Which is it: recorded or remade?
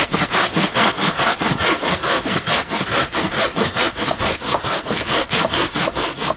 remade